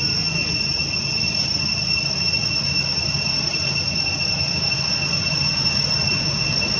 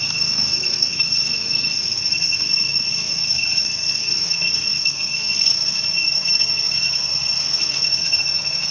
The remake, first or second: second